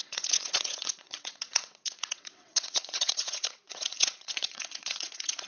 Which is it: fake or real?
fake